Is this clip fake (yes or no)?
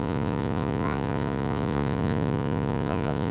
yes